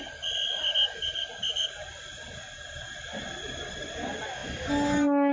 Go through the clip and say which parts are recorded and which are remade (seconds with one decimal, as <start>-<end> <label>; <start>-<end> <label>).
0.0-5.3 recorded